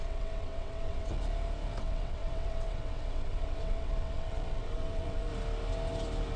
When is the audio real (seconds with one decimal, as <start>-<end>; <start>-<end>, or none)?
1.1-1.8; 5.3-6.4